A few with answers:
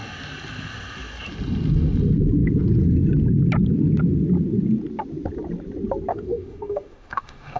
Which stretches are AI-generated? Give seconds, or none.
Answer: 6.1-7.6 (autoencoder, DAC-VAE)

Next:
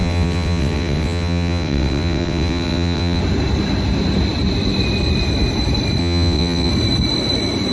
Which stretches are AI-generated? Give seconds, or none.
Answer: 0.0-3.2 (vocoder, WaveNeXt); 6.0-6.7

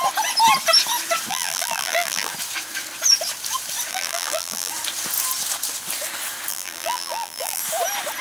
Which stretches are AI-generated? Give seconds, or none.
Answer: 1.3-2.3 (vocoder, BigVGAN v2); 3.9-4.7; 6.5-7.6

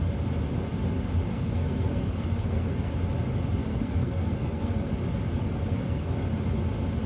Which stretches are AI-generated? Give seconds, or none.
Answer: 1.3-2.9 (codec, SNAC); 3.6-4.9; 5.4-6.3